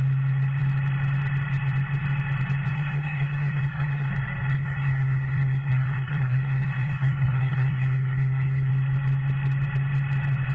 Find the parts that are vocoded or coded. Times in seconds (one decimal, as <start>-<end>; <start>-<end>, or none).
2.7-4.1; 4.5-8.7